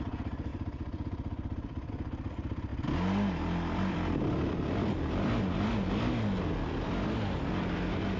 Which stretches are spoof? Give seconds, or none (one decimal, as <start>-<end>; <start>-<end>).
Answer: 0.5-1.9; 2.7-5.7